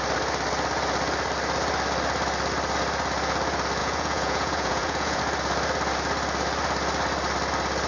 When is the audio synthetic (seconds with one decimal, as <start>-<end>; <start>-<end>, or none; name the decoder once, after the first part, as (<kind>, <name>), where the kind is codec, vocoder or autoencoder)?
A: 3.8-5.2 (vocoder, Vocos)

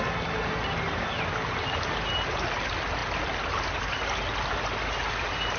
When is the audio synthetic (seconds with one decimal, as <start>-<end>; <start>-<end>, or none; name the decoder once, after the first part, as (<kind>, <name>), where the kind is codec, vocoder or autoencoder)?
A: none

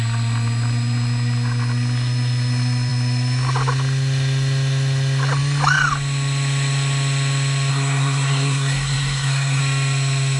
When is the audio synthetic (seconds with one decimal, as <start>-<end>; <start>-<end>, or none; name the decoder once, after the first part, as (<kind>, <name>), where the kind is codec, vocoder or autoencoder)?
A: 7.7-9.6 (codec, SNAC)

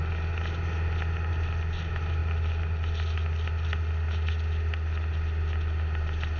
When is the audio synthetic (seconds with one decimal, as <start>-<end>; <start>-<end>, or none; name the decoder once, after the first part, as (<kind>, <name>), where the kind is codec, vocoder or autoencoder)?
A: none

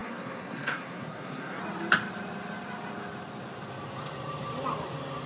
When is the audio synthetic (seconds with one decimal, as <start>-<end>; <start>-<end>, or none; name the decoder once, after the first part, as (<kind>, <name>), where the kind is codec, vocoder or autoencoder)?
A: 0.0-1.6 (codec, SNAC)